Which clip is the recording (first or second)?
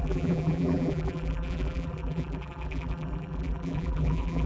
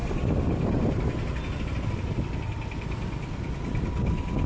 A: second